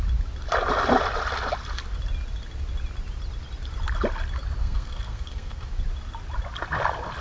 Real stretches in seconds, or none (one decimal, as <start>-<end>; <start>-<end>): 0.0-4.6; 5.7-7.2